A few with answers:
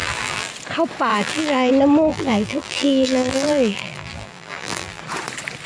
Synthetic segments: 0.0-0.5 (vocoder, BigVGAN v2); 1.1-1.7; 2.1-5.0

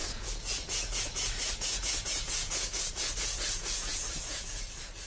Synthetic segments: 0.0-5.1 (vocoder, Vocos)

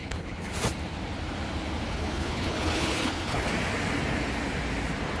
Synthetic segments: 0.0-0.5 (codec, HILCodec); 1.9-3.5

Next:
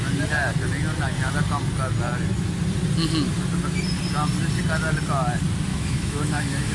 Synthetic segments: 5.7-6.7 (autoencoder, DAC-VAE)